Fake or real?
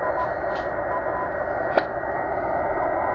real